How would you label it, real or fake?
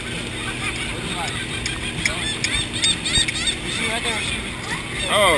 real